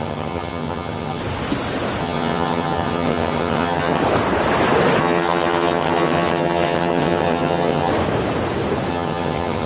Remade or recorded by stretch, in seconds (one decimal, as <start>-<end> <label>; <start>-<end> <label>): 0.0-1.2 remade; 1.2-2.0 recorded; 2.0-4.0 remade; 4.0-5.0 recorded; 5.0-7.9 remade; 7.9-8.9 recorded; 8.9-9.7 remade